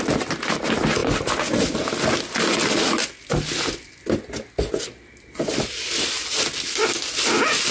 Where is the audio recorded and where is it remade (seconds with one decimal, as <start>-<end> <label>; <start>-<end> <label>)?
0.0-7.7 recorded